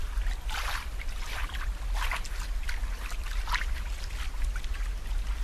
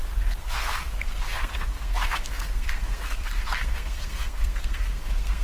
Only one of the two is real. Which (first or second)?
first